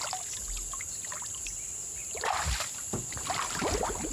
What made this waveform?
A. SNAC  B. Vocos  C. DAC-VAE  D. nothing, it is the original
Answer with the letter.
D